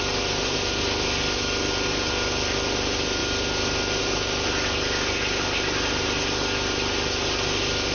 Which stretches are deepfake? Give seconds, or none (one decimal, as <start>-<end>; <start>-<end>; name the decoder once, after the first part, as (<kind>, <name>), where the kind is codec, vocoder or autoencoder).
none

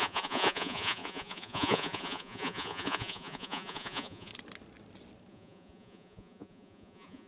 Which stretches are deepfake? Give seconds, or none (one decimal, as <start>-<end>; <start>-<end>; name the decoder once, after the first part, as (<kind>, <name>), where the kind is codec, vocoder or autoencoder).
0.0-4.3 (vocoder, Vocos); 5.3-7.3

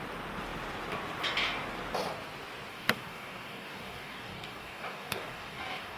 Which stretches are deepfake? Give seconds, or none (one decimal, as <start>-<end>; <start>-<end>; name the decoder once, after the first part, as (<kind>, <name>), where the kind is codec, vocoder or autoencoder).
2.7-6.0 (codec, DAC)

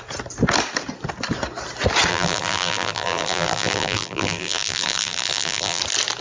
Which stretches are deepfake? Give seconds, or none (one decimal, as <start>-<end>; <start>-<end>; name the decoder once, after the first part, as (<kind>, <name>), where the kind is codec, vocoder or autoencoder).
2.1-5.8 (vocoder, BigVGAN v2)

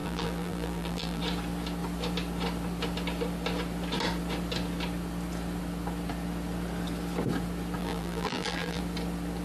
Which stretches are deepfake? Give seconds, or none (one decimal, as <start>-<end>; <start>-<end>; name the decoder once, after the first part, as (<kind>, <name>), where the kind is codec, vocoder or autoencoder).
0.0-1.2 (vocoder, BigVGAN v2); 7.8-8.8